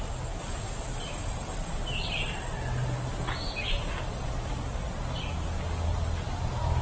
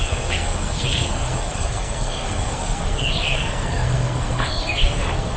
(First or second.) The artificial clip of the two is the second